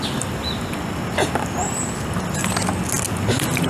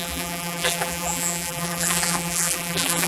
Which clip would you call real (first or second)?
first